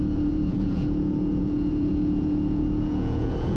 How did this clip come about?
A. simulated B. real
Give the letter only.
A